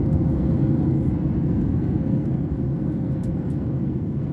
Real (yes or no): no